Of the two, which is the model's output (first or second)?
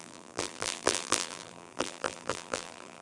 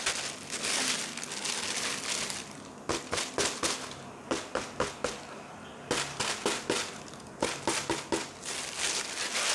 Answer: first